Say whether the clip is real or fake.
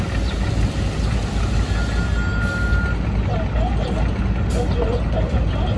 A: real